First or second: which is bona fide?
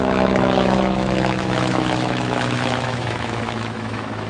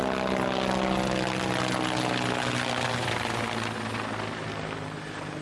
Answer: second